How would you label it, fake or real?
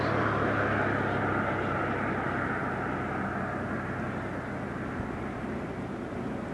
real